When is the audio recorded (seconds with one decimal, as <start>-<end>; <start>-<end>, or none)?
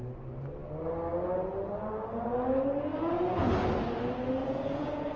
0.0-4.4